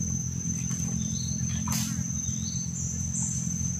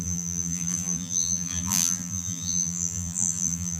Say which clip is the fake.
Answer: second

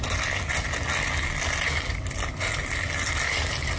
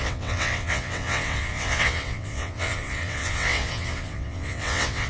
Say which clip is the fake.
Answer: second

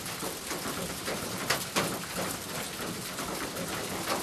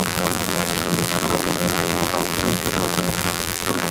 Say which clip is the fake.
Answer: second